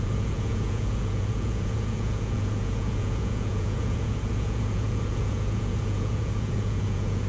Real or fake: fake